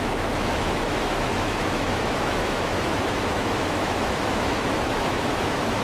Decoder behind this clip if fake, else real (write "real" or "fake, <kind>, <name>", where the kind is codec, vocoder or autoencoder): fake, autoencoder, DAC-VAE